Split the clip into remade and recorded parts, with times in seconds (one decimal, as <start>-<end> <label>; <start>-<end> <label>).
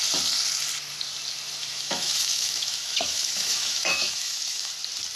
0.0-1.6 recorded; 1.6-4.7 remade; 4.7-5.2 recorded